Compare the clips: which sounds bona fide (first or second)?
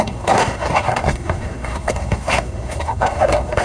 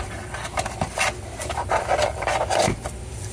second